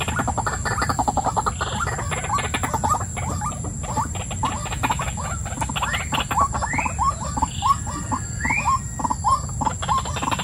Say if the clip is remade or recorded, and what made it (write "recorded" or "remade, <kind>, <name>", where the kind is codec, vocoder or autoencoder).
recorded